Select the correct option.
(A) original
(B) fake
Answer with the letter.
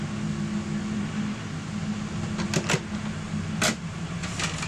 A